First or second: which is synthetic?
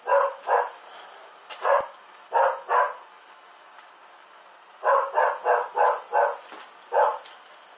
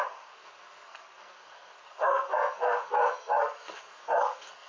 second